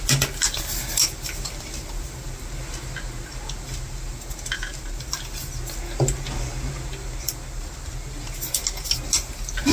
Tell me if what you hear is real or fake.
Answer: real